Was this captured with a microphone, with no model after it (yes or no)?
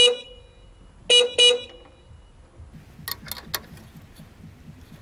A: yes